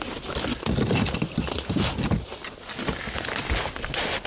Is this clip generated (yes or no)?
no